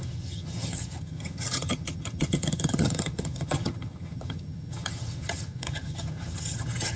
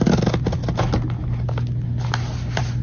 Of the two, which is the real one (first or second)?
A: second